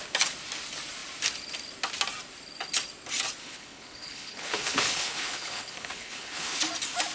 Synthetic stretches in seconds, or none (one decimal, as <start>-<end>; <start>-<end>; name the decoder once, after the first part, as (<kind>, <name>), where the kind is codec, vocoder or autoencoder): 3.4-6.6 (codec, HILCodec)